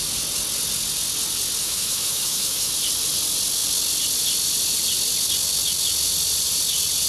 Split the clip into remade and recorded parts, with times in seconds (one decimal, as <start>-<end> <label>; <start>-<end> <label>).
0.0-1.6 recorded; 1.6-2.7 remade; 2.7-7.1 recorded